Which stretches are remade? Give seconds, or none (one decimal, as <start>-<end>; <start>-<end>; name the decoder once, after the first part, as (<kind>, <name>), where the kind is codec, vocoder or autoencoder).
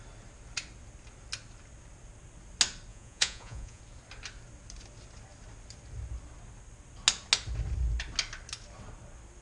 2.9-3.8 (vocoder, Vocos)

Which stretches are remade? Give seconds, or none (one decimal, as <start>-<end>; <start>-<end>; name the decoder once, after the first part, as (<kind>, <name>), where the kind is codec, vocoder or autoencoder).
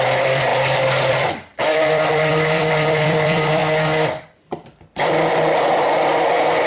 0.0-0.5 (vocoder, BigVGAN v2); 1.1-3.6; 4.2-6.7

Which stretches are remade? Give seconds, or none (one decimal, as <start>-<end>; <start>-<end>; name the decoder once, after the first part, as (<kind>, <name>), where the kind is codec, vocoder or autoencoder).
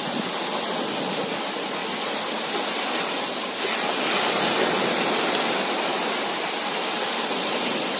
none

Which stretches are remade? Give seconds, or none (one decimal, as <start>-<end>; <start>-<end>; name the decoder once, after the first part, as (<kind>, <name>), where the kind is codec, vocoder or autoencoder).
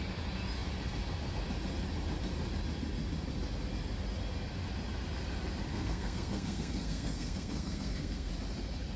5.7-8.3 (codec, SNAC)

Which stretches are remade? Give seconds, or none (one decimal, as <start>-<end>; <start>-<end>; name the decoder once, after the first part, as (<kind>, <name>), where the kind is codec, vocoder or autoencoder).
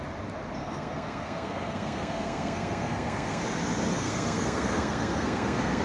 0.6-3.4 (codec, SNAC); 3.9-5.8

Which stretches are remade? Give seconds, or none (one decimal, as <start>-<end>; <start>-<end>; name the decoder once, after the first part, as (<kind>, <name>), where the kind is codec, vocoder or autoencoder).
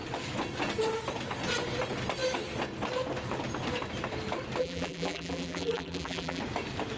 4.6-6.4 (vocoder, BigVGAN v2)